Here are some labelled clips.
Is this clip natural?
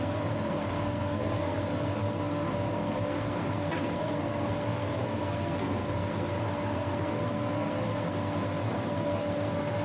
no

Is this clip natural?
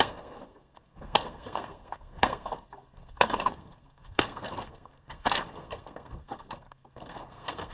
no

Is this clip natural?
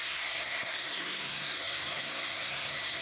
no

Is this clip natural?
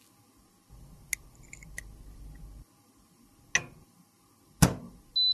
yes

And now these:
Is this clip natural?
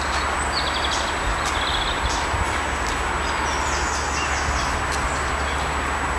yes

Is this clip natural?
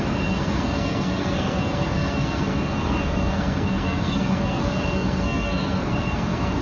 no